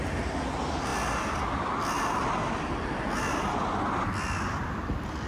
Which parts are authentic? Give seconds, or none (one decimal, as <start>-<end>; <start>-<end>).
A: 0.0-5.3